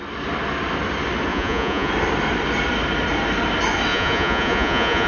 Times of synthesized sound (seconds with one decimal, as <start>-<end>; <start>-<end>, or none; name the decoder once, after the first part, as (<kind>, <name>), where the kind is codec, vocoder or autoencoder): 1.3-1.9 (vocoder, Vocos); 3.9-5.1